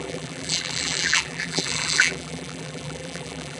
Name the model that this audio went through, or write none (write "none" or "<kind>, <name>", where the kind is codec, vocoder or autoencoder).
vocoder, BigVGAN v2